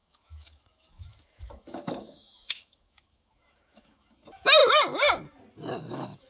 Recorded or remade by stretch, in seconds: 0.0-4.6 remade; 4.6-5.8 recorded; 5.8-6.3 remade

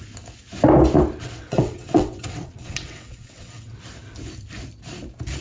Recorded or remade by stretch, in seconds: 0.0-1.2 recorded; 1.2-3.8 remade; 3.8-5.4 recorded

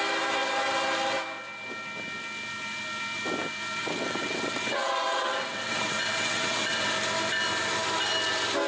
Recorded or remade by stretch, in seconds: 0.0-3.8 recorded; 3.8-6.8 remade; 6.8-8.7 recorded